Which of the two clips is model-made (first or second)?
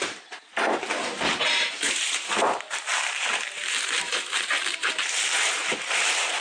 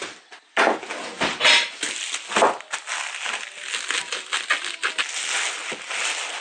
first